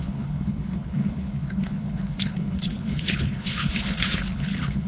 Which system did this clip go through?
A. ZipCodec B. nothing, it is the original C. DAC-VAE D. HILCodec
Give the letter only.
D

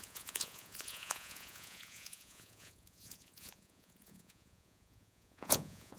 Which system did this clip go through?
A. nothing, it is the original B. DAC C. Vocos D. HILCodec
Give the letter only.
C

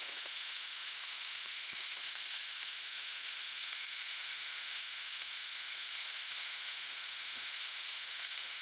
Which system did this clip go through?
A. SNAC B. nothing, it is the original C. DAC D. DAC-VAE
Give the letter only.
D